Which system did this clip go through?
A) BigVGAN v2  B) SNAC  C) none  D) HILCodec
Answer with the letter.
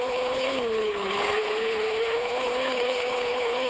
D